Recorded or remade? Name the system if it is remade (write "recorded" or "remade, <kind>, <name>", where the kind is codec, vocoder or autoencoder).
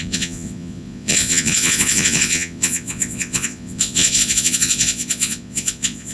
remade, vocoder, Vocos